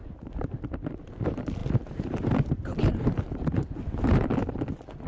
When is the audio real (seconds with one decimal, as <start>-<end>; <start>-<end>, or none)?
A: 0.0-5.1